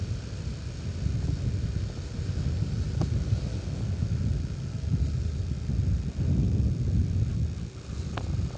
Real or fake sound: real